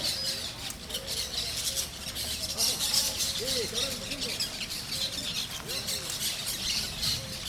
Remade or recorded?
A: recorded